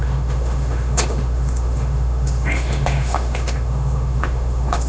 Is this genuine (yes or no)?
no